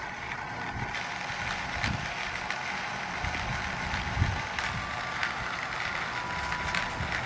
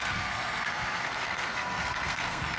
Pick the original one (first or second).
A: first